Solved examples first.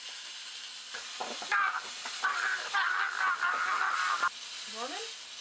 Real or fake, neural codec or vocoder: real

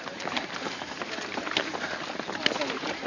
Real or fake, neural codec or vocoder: real